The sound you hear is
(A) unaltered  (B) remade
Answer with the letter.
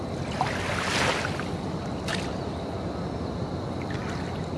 A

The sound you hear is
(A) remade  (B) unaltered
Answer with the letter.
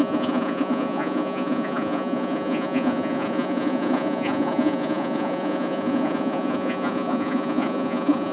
A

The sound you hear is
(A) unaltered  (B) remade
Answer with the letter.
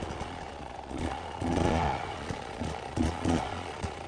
B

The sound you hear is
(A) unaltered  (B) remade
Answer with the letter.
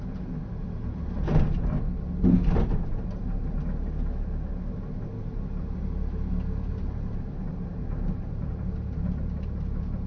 A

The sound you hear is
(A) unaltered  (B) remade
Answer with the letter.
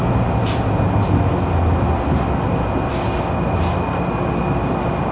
A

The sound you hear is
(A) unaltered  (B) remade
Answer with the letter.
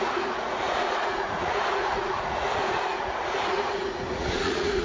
B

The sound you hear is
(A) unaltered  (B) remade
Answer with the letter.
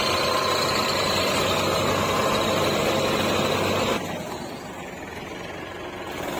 A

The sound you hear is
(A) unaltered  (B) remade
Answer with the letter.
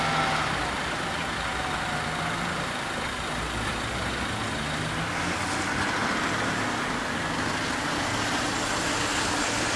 A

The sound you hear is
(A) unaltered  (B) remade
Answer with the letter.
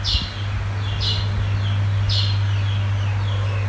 A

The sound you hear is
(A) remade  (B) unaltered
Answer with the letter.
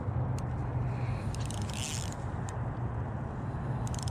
B